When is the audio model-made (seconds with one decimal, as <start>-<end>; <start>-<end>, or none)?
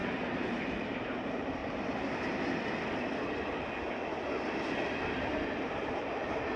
0.0-1.6; 5.6-6.6